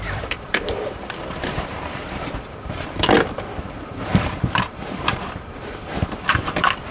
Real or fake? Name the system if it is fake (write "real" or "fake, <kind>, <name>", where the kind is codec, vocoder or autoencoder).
fake, vocoder, BigVGAN v2